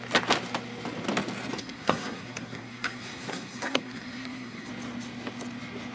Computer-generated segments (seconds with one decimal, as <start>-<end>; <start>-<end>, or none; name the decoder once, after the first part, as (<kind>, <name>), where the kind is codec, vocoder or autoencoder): 1.6-4.7 (codec, SNAC)